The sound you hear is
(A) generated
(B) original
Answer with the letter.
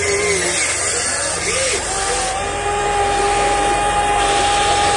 B